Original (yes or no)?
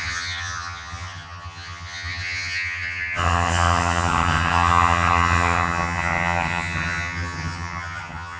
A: no